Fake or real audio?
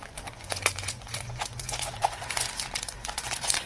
fake